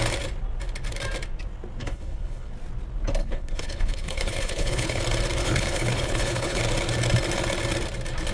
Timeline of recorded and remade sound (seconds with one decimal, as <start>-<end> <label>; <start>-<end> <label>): 0.0-1.8 recorded; 1.8-2.5 remade; 2.5-3.2 recorded; 3.2-5.0 remade; 5.0-5.4 recorded; 5.4-6.6 remade; 6.6-8.3 recorded